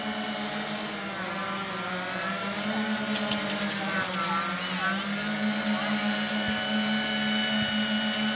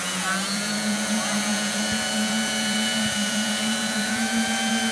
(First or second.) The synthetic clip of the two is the second